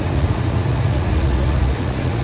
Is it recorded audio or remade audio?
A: remade